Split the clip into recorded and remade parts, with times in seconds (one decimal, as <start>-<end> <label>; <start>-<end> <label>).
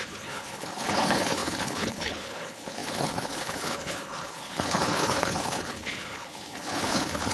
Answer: 0.0-7.3 remade